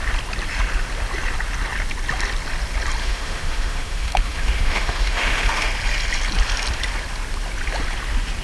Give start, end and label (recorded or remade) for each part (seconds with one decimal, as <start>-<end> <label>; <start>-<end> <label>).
0.0-3.0 recorded; 3.0-5.7 remade; 5.7-8.4 recorded

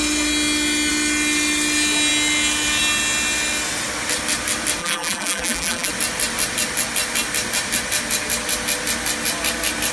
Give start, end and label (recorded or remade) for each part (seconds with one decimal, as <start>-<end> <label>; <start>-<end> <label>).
0.0-4.8 recorded; 4.8-5.9 remade; 5.9-9.9 recorded